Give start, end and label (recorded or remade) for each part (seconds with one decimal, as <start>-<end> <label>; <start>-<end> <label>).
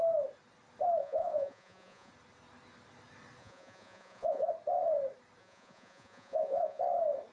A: 0.0-1.0 recorded; 1.0-2.1 remade; 2.1-3.4 recorded; 3.4-4.5 remade; 4.5-5.4 recorded; 5.4-6.8 remade; 6.8-7.3 recorded